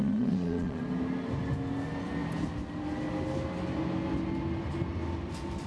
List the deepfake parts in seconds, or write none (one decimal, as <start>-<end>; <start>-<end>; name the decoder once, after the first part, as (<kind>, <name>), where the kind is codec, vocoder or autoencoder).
0.0-0.8 (vocoder, Vocos)